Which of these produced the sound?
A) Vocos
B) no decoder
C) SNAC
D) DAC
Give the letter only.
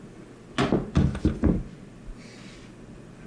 B